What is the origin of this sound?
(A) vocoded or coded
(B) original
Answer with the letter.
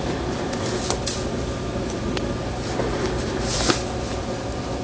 B